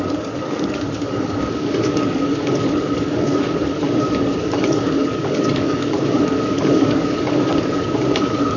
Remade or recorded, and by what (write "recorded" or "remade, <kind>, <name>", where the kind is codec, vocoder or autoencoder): remade, codec, DAC